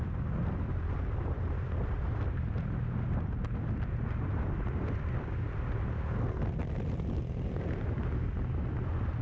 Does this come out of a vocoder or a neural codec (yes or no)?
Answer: no